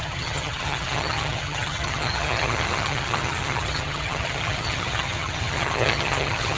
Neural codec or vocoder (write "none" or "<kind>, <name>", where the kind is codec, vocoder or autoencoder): vocoder, HiFi-GAN